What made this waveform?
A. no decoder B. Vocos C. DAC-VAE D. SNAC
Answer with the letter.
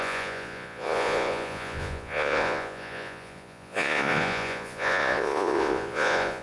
B